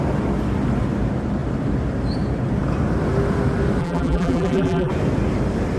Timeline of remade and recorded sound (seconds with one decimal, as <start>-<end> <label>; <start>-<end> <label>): 0.0-3.8 recorded; 3.8-4.9 remade; 4.9-5.8 recorded